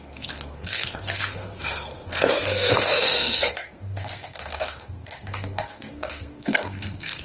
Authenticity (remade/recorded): remade